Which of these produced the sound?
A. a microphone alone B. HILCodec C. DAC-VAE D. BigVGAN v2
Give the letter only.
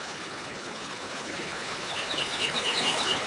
B